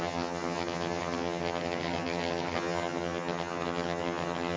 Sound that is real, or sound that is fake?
fake